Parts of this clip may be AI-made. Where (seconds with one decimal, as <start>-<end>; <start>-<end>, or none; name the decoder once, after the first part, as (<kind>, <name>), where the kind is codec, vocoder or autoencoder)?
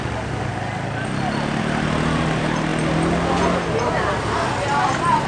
none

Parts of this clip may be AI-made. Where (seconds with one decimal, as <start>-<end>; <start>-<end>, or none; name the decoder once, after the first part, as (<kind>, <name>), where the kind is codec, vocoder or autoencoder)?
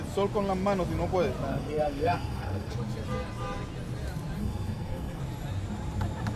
1.5-2.7 (codec, SNAC); 4.4-5.2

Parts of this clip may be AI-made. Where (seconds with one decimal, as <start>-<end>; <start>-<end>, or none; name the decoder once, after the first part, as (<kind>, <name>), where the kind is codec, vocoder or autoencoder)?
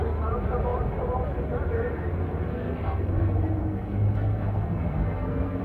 2.5-3.2 (codec, SNAC); 3.6-5.6